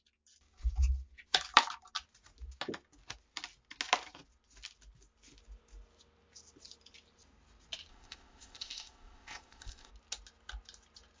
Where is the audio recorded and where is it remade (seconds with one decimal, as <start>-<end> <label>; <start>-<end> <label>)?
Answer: 0.0-7.9 recorded; 7.9-9.9 remade; 9.9-11.2 recorded